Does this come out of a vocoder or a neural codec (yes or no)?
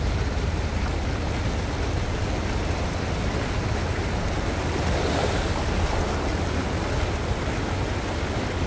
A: no